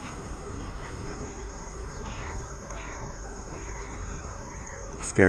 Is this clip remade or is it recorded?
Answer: remade